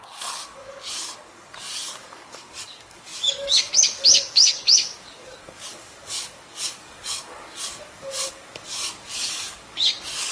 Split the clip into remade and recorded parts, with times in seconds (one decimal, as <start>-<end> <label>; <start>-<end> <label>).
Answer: 0.0-10.3 remade